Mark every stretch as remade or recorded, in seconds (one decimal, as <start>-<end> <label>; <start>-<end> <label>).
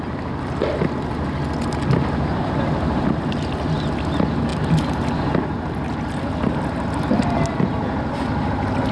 0.0-8.9 recorded